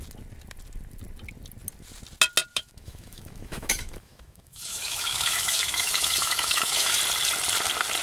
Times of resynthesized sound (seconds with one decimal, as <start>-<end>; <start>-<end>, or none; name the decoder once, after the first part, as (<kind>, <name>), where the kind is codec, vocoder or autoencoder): 2.5-7.0 (autoencoder, DAC-VAE)